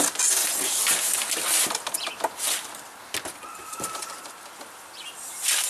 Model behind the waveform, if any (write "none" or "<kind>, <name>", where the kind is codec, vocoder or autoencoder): none